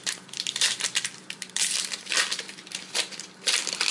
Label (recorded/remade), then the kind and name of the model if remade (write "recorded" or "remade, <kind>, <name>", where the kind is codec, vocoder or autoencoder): remade, vocoder, BigVGAN v2